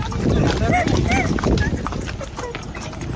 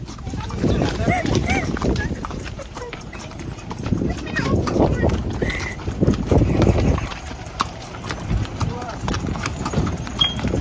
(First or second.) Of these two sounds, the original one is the first